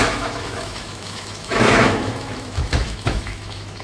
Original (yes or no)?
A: no